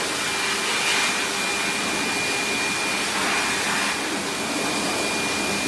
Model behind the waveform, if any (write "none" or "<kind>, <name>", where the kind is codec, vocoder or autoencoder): none